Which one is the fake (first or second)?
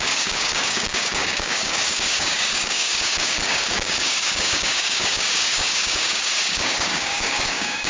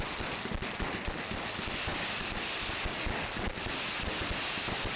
first